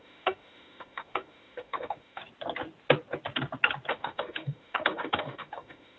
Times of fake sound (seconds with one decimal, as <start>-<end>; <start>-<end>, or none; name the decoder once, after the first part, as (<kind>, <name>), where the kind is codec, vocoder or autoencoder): 0.0-2.2 (autoencoder, DAC-VAE); 3.9-6.0